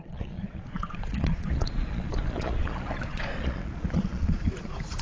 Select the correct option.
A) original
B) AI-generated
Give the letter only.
B